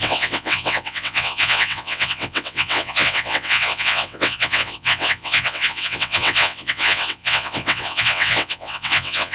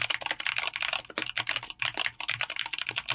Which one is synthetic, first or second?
first